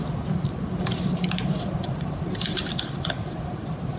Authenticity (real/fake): real